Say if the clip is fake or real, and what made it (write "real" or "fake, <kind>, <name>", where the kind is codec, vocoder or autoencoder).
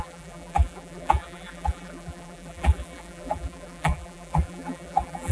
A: fake, vocoder, BigVGAN v2